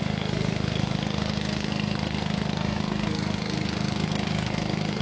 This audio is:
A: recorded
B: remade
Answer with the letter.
B